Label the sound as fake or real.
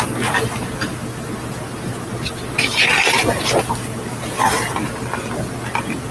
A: real